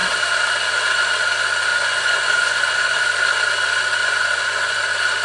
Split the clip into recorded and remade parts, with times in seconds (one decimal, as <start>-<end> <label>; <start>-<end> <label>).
0.0-1.7 recorded; 1.7-3.0 remade; 3.0-4.0 recorded; 4.0-4.8 remade; 4.8-5.2 recorded